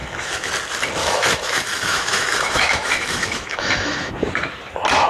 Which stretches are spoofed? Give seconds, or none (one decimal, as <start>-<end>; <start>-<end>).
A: 0.0-0.5; 1.0-4.1